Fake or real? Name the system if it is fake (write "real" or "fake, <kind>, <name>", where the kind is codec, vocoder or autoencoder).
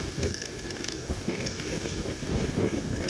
fake, codec, DAC